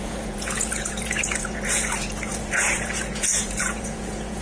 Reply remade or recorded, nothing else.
remade